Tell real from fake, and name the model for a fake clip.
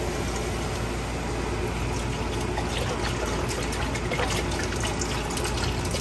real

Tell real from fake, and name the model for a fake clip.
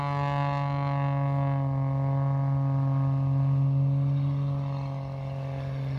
real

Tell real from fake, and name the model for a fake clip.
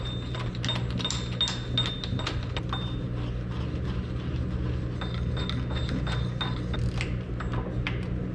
real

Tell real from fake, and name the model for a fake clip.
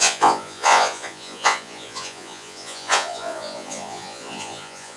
fake, vocoder, Vocos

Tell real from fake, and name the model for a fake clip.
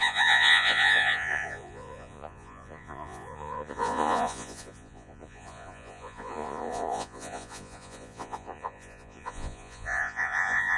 fake, vocoder, Vocos